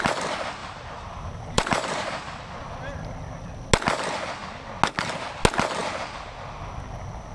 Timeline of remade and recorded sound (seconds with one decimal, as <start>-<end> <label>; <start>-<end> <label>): 0.0-0.6 recorded; 0.6-2.6 remade; 2.6-7.3 recorded